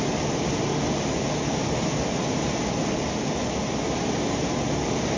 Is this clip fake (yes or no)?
no